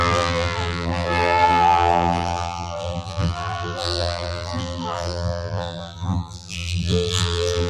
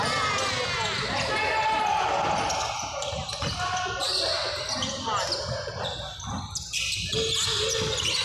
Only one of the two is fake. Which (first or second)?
first